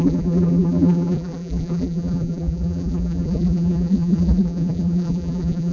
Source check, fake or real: fake